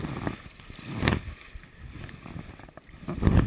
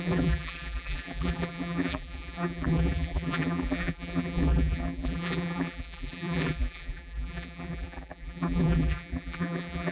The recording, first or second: first